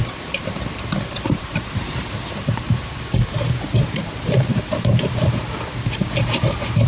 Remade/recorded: remade